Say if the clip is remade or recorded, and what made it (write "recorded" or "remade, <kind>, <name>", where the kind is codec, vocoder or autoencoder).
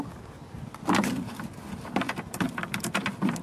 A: recorded